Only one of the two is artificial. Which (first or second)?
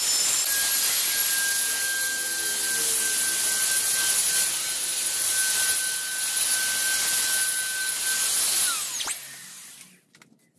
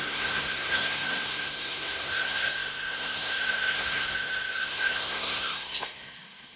second